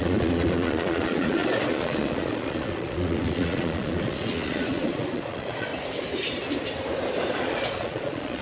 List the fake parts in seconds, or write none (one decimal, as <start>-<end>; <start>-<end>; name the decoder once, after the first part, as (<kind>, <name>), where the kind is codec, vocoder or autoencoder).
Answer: 0.0-5.7 (vocoder, Vocos); 7.4-8.4